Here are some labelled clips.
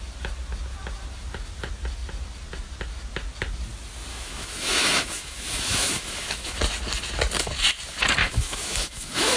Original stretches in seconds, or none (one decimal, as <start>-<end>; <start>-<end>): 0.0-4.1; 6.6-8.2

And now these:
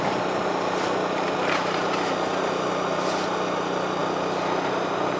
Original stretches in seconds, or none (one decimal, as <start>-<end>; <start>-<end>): 0.0-5.2

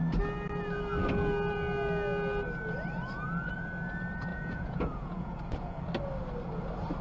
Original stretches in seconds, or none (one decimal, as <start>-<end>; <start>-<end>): 0.0-4.3; 5.8-7.0

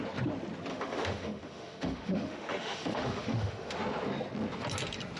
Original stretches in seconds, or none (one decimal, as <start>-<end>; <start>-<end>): 0.0-0.7; 3.8-5.2

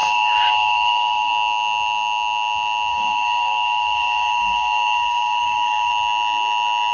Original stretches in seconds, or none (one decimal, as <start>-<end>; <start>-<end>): 1.3-2.9; 5.9-6.9